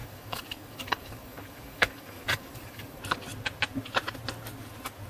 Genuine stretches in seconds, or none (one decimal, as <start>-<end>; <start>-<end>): 3.0-5.1